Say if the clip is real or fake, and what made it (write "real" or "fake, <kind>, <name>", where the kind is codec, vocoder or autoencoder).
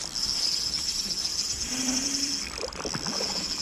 fake, vocoder, BigVGAN v2